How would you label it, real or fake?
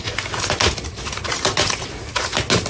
real